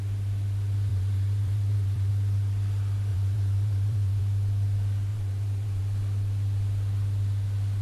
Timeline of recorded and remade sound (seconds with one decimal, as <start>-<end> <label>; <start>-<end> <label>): 0.0-0.9 recorded; 0.9-2.1 remade; 2.1-3.1 recorded; 3.1-4.2 remade; 4.2-5.1 recorded; 5.1-5.8 remade; 5.8-7.8 recorded